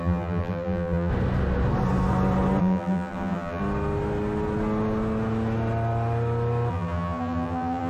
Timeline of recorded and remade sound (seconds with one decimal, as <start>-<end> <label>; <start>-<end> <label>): 0.0-1.1 remade; 1.1-2.6 recorded; 2.6-3.6 remade; 3.6-6.7 recorded; 6.7-7.9 remade